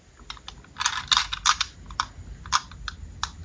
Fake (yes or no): no